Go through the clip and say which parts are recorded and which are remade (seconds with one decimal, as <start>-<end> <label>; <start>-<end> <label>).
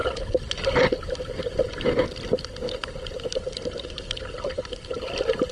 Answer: 0.0-2.9 recorded; 2.9-5.5 remade